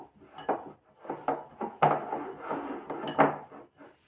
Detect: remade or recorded recorded